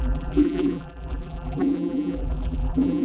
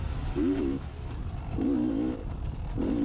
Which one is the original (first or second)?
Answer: second